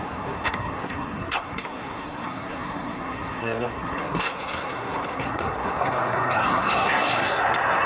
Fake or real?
fake